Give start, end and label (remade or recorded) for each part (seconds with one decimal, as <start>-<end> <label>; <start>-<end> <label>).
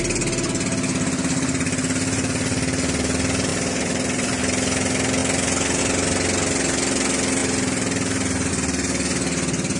0.0-3.5 recorded; 3.5-4.4 remade; 4.4-9.8 recorded